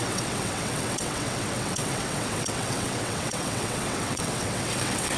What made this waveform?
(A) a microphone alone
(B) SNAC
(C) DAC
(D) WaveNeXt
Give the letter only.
D